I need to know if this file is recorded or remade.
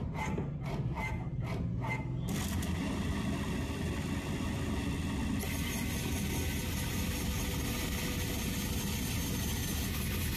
recorded